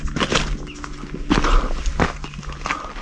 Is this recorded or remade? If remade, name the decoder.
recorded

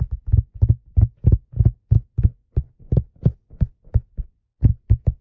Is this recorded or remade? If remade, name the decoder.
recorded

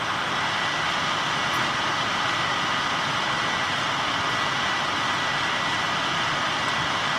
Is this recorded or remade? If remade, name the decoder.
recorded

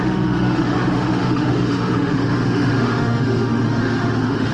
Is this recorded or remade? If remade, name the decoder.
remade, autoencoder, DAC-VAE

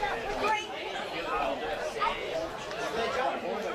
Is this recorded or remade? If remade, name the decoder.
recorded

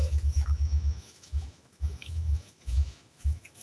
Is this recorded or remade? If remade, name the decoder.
remade, autoencoder, DAC-VAE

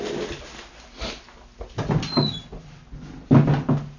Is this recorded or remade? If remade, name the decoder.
recorded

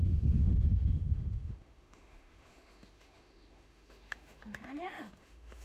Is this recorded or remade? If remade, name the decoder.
remade, autoencoder, DAC-VAE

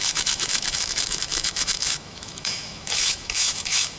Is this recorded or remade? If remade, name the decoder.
remade, autoencoder, DAC-VAE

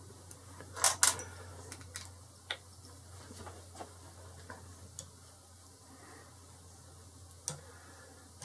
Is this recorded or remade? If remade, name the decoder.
recorded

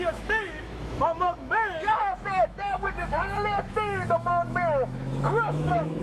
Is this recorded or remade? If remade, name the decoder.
remade, autoencoder, DAC-VAE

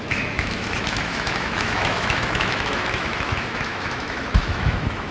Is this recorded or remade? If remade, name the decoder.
remade, autoencoder, DAC-VAE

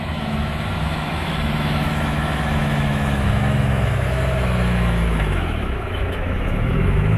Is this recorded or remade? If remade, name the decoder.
remade, autoencoder, DAC-VAE